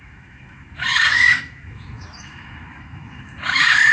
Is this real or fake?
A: fake